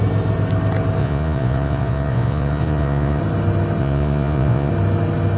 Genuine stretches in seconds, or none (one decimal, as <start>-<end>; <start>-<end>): 0.0-1.0; 3.2-3.8; 4.7-5.4